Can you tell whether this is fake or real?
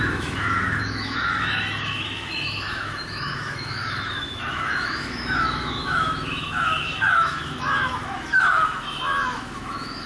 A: fake